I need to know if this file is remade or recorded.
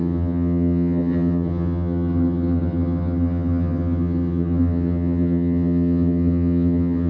remade